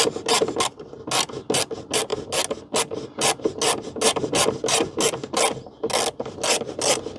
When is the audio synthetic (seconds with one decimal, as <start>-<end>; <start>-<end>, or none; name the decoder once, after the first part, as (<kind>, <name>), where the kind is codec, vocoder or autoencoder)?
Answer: none